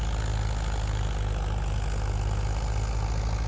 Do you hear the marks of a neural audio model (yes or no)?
no